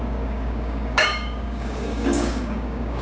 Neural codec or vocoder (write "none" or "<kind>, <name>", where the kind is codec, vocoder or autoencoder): codec, DAC